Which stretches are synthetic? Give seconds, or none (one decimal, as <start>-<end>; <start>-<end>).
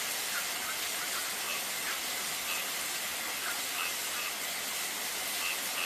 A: none